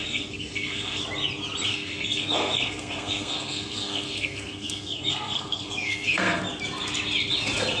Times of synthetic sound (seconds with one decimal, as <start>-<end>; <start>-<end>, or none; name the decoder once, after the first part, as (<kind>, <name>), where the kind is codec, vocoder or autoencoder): 0.0-1.0 (codec, SNAC); 1.7-6.4